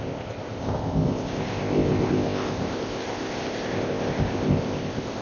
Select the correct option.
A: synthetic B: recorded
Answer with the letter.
A